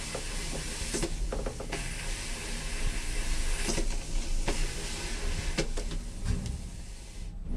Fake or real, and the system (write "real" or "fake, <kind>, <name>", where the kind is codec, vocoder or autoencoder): real